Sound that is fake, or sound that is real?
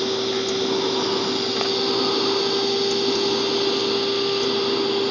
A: real